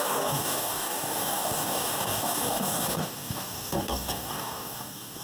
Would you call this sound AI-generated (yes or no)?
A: yes